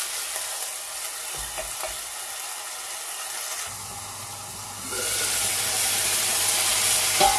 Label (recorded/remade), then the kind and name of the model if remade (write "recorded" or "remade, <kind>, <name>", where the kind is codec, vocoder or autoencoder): recorded